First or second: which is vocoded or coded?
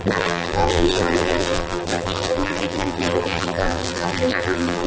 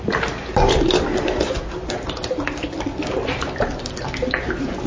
first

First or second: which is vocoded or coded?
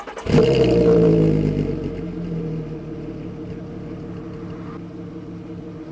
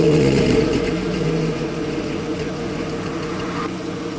second